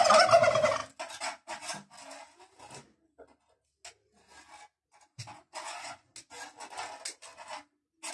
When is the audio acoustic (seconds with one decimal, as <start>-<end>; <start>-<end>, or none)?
0.0-5.3; 6.1-8.1